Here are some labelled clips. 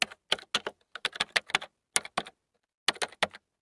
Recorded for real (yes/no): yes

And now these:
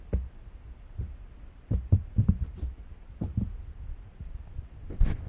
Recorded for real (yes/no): no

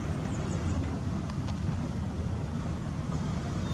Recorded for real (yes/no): yes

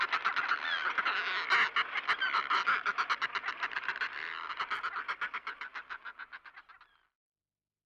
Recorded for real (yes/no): yes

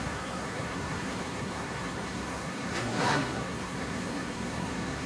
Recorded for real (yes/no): no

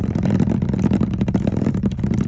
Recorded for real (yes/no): yes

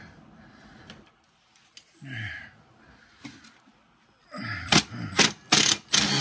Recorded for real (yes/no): yes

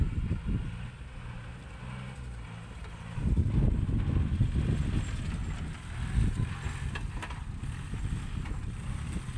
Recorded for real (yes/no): yes